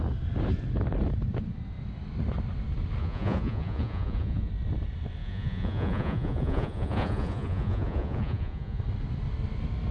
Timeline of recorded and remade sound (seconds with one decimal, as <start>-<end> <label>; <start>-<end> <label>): 0.0-3.0 recorded; 3.0-4.5 remade; 4.5-5.2 recorded; 5.2-8.8 remade; 8.8-9.9 recorded